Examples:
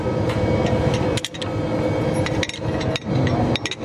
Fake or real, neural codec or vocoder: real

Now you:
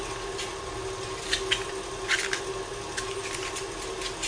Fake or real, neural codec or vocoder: real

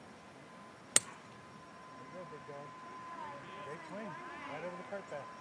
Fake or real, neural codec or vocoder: real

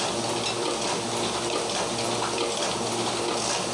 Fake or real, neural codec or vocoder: real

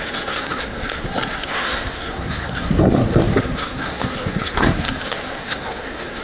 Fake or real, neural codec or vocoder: fake, codec, SNAC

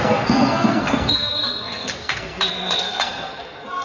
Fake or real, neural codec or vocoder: fake, codec, SNAC